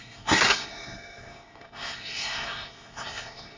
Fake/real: fake